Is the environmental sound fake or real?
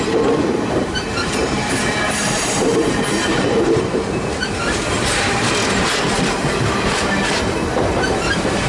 fake